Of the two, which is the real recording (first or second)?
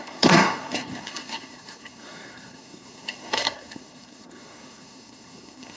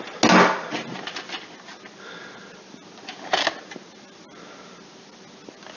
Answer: second